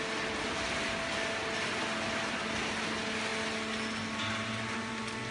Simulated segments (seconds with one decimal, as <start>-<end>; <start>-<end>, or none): 1.4-2.4